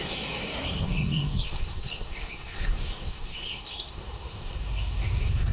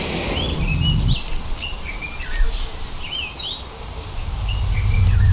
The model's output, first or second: first